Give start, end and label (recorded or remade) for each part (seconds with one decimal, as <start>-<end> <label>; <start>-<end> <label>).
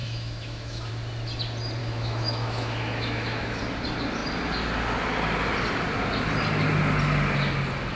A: 0.0-0.9 remade; 0.9-1.8 recorded; 1.8-3.6 remade; 3.6-8.0 recorded